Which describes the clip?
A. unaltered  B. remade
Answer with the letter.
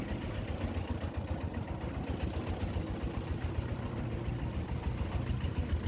A